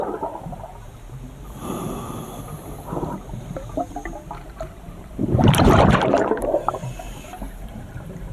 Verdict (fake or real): fake